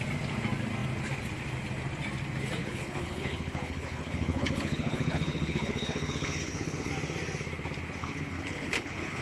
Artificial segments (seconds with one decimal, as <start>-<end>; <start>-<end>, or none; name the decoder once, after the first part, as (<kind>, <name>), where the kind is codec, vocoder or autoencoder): 2.6-6.9 (codec, HILCodec); 8.0-9.2